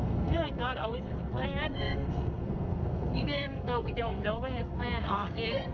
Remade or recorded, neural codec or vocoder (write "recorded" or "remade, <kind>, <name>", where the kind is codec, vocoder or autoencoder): remade, codec, SNAC